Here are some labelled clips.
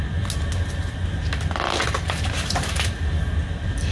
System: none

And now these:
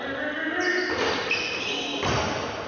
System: none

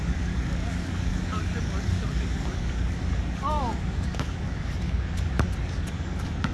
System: codec, DAC